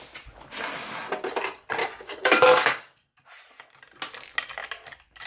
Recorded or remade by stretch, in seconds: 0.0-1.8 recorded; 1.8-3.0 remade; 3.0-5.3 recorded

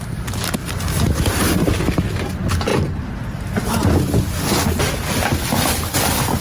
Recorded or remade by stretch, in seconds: 0.0-6.4 recorded

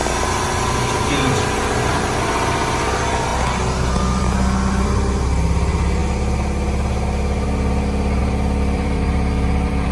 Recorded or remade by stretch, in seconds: 0.0-1.1 recorded; 1.1-3.3 remade; 3.3-4.0 recorded; 4.0-6.0 remade; 6.0-8.2 recorded; 8.2-9.9 remade

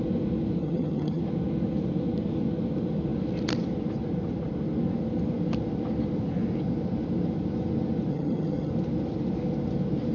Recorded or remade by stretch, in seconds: 0.0-0.6 recorded; 0.6-1.2 remade; 1.2-8.1 recorded; 8.1-8.7 remade; 8.7-10.1 recorded

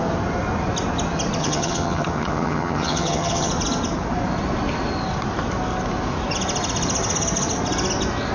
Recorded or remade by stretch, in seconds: 0.0-1.4 recorded; 1.4-3.5 remade; 3.5-8.3 recorded

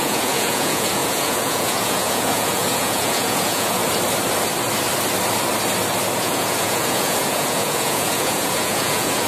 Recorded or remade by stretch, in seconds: 0.0-3.8 remade; 3.8-6.2 recorded; 6.2-9.3 remade

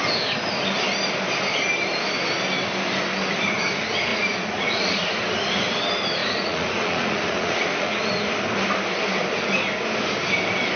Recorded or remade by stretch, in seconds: 0.0-4.1 recorded; 4.1-5.1 remade; 5.1-6.2 recorded; 6.2-8.0 remade; 8.0-10.8 recorded

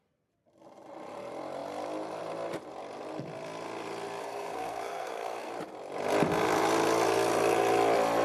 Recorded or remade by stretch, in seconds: 0.0-4.2 recorded; 4.2-5.5 remade; 5.5-8.2 recorded